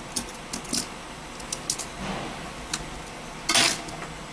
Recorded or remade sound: recorded